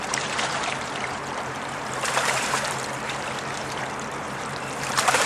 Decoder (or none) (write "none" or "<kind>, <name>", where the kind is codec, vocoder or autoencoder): vocoder, BigVGAN v2